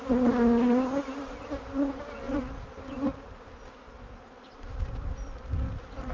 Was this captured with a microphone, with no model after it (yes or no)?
yes